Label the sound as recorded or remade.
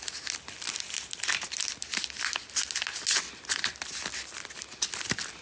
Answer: recorded